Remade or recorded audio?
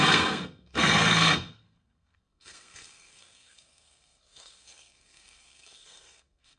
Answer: remade